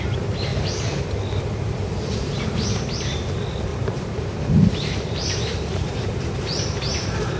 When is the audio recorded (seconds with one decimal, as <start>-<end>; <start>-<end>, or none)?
0.0-3.7

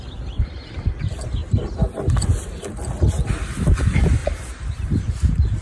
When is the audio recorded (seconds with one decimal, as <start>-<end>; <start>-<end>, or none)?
0.0-4.2

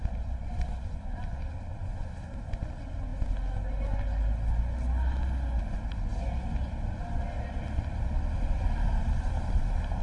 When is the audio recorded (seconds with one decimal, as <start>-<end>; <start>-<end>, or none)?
0.0-10.0

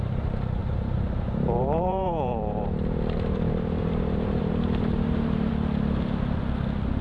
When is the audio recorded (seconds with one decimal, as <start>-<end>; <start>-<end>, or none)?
5.5-7.0